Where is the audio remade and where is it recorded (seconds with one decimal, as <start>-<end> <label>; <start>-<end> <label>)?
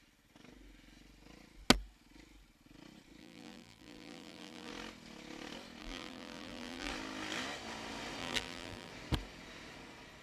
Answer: 0.0-3.2 recorded; 3.2-4.7 remade; 4.7-5.8 recorded; 5.8-6.9 remade; 6.9-8.2 recorded; 8.2-8.9 remade; 8.9-10.2 recorded